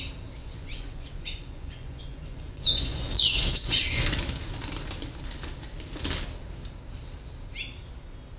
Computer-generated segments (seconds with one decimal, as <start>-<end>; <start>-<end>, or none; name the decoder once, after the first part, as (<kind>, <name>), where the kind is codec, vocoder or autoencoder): 0.4-4.2 (vocoder, Vocos)